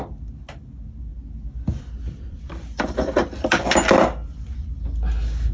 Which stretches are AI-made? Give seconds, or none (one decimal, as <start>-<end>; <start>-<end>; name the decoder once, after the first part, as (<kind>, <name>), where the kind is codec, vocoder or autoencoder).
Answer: 1.4-4.7 (vocoder, BigVGAN v2)